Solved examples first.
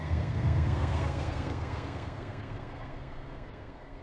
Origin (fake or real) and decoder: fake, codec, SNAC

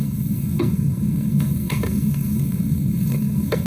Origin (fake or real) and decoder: fake, codec, SNAC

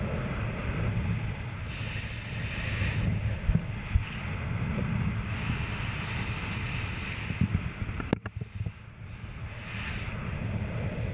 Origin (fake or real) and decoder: real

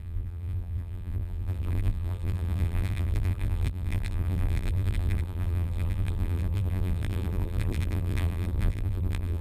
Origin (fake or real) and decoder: fake, vocoder, BigVGAN v2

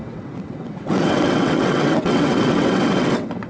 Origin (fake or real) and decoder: fake, vocoder, WaveNeXt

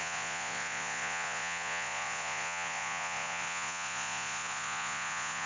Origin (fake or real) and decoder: fake, vocoder, Vocos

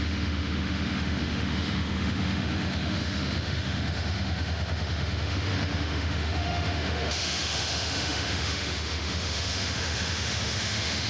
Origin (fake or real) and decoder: fake, autoencoder, DAC-VAE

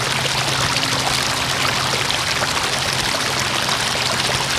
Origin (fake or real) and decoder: real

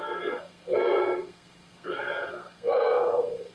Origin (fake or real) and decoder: fake, codec, SNAC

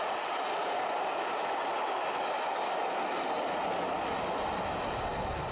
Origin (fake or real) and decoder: real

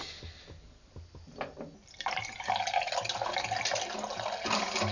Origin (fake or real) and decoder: real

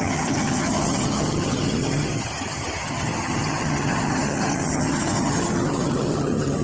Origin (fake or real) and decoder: fake, vocoder, HiFi-GAN